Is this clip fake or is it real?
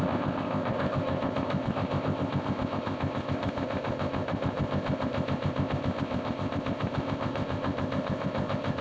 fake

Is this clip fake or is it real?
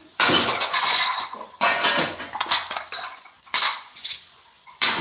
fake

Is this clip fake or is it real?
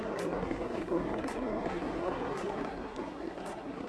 fake